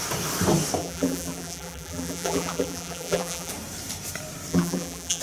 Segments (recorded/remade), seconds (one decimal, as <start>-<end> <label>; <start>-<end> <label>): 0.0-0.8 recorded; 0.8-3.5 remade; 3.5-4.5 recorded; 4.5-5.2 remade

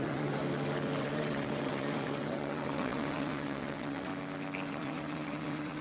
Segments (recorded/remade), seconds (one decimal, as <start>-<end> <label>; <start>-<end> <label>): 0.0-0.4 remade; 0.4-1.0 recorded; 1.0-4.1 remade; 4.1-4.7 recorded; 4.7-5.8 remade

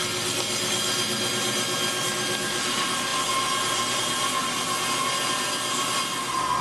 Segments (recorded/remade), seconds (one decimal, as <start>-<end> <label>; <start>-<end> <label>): 0.0-6.6 recorded

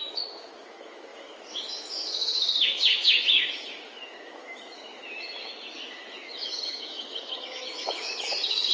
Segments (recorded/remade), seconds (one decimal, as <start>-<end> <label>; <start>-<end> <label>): 0.0-8.7 remade

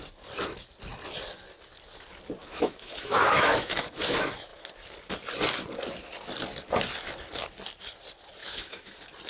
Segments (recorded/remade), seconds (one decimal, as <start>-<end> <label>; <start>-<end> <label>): 0.0-2.4 recorded; 2.4-4.1 remade; 4.1-8.4 recorded; 8.4-8.9 remade; 8.9-9.3 recorded

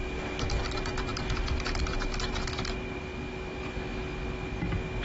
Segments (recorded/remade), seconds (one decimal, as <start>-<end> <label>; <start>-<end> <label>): 0.0-5.0 recorded

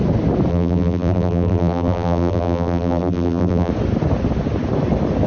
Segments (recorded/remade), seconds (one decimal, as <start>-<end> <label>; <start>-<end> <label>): 0.0-0.5 recorded; 0.5-3.7 remade; 3.7-5.3 recorded

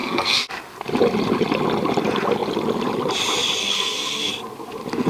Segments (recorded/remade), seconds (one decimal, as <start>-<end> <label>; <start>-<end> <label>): 0.0-0.5 remade; 0.5-3.6 recorded; 3.6-4.3 remade; 4.3-5.1 recorded